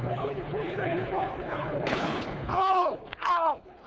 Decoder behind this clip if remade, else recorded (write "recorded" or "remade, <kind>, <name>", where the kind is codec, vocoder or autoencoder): remade, codec, HILCodec